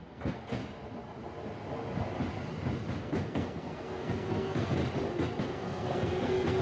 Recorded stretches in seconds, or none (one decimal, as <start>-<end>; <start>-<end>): 0.6-3.0; 4.8-5.4